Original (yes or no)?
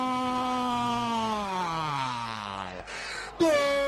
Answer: no